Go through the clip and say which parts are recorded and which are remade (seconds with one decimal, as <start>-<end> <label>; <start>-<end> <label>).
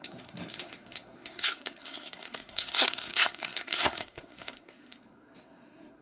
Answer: 0.0-6.0 remade